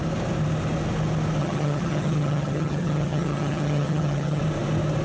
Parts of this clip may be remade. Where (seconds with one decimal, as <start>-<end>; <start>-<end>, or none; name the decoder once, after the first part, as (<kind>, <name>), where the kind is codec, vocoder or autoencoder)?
1.4-4.4 (vocoder, HiFi-GAN)